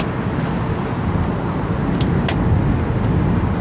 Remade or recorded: recorded